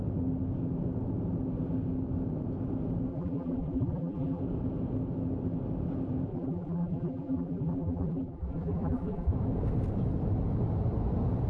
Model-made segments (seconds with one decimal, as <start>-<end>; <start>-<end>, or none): 3.1-4.4; 6.3-9.3